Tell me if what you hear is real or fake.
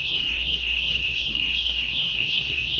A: fake